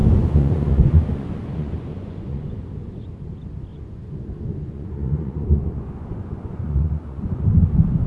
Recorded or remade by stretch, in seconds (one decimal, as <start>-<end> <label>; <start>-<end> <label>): 0.0-2.7 remade; 2.7-3.7 recorded; 3.7-7.4 remade; 7.4-8.1 recorded